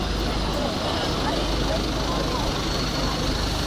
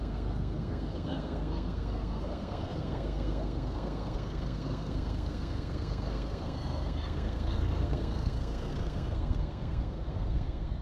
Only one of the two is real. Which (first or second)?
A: first